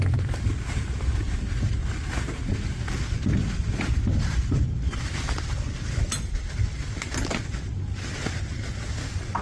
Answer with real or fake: real